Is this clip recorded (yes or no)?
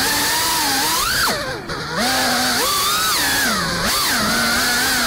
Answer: yes